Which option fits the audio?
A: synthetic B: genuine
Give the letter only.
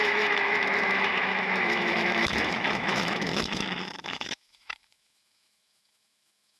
A